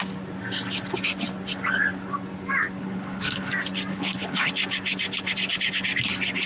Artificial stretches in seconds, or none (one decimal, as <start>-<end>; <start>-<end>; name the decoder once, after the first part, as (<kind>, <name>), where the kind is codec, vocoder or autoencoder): 2.8-3.5 (codec, HILCodec); 3.9-4.5